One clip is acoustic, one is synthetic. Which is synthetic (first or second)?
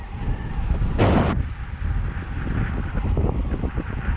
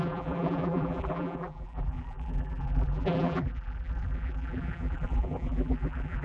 second